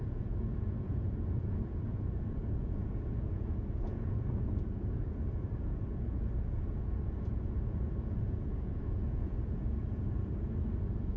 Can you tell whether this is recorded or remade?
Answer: remade